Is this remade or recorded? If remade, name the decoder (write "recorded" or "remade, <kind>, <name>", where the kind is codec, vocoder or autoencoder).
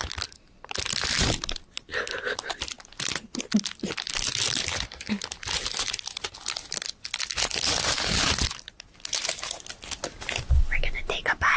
recorded